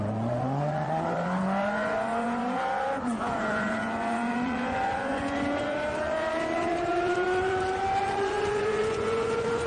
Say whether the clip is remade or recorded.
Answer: remade